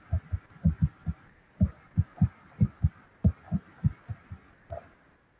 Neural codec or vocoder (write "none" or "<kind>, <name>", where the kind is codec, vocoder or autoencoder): none